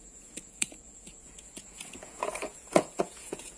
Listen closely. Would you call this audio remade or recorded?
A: remade